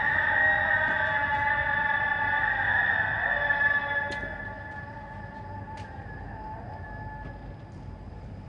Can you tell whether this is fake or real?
real